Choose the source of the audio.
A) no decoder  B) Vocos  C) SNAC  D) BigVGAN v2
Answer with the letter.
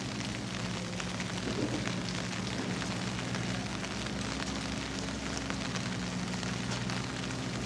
A